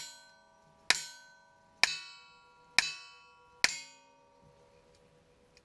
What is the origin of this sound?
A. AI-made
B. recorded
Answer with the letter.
B